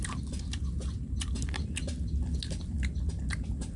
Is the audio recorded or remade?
recorded